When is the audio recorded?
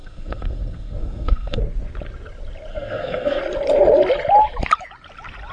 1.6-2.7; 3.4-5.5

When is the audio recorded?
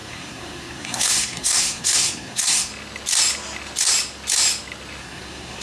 2.7-5.0